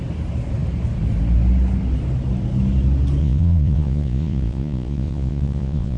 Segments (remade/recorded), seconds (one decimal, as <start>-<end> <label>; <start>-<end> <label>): 0.0-3.2 recorded; 3.2-6.0 remade